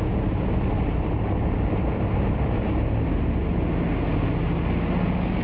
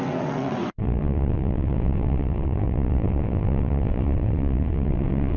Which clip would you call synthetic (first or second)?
second